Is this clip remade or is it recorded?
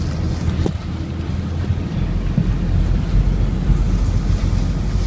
recorded